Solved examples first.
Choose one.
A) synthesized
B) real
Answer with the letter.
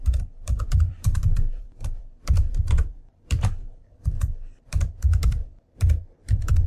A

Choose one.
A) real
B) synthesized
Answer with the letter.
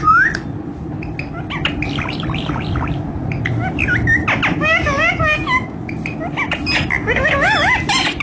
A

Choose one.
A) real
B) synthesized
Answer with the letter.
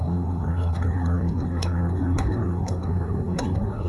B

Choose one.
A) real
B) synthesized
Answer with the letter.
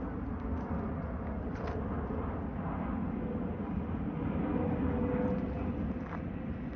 A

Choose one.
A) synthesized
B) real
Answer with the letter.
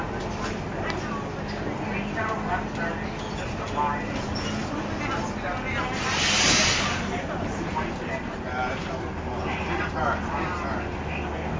B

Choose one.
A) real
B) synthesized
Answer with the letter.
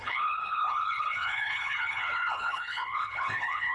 B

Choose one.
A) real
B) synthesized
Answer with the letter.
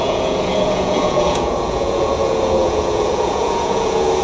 B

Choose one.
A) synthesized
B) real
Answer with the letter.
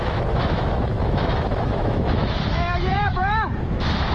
A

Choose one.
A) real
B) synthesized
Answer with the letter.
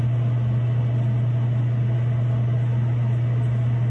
A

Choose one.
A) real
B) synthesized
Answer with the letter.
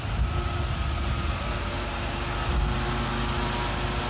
A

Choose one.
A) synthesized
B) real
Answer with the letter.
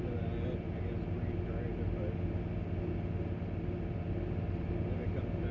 B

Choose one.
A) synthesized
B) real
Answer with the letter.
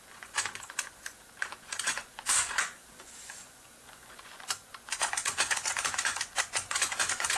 A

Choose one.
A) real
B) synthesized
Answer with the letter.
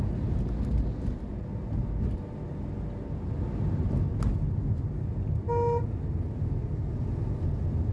A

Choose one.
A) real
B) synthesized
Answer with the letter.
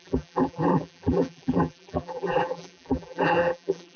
B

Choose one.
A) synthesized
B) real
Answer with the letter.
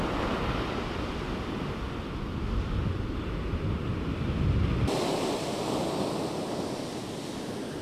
B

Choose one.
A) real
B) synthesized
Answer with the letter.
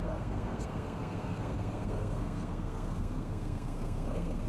B